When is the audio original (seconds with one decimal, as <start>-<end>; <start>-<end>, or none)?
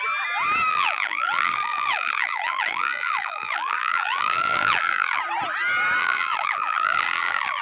0.0-0.7; 5.2-6.0